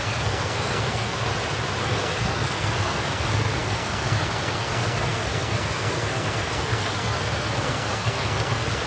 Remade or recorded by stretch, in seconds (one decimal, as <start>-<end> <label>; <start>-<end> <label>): 0.0-1.3 remade; 1.3-1.8 recorded; 1.8-8.9 remade